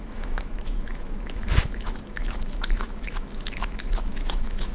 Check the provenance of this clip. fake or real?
fake